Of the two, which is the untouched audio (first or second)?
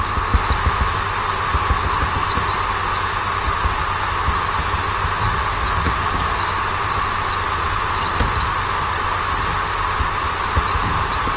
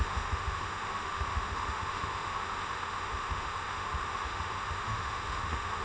first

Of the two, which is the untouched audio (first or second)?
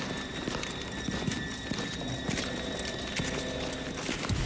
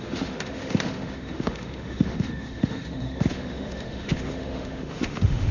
first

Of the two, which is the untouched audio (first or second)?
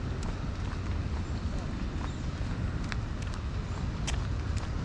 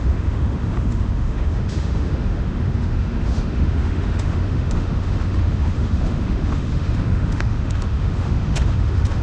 first